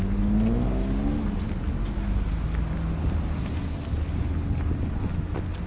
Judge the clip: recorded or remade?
recorded